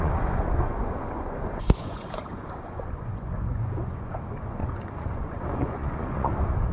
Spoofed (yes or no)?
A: yes